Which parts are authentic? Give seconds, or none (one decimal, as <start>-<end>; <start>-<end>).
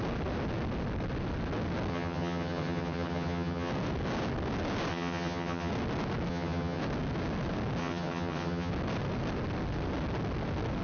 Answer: 0.0-1.9; 3.7-4.9; 5.7-6.3; 6.8-7.8; 8.7-10.8